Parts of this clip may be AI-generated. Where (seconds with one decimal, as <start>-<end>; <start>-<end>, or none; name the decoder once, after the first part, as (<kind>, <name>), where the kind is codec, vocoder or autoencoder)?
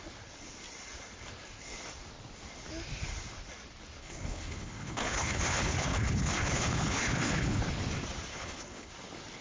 4.0-7.6 (codec, HILCodec); 8.3-8.9